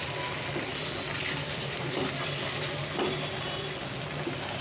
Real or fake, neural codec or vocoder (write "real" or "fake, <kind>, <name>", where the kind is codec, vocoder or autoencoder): real